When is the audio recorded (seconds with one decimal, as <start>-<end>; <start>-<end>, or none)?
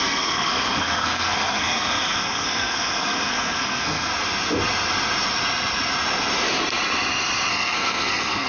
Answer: 4.1-7.5